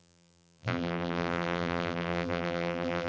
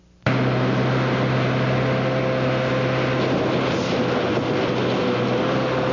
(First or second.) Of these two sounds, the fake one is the first